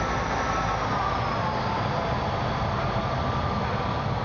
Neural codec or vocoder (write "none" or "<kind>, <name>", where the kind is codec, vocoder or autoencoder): none